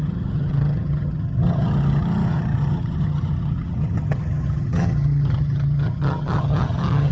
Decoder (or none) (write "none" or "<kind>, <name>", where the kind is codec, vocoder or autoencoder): vocoder, HiFi-GAN